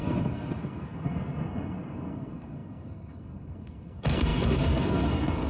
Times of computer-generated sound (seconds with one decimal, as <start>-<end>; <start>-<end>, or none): 0.0-5.5